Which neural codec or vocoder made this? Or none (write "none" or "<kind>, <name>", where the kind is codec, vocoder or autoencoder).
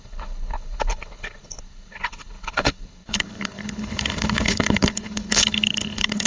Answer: codec, HILCodec